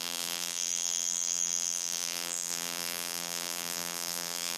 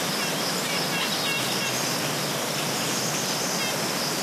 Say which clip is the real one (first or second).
second